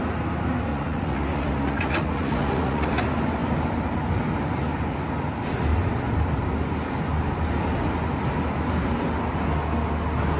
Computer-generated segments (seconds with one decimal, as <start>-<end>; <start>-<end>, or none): 0.7-3.0